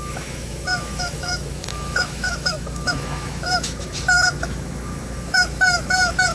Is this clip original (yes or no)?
no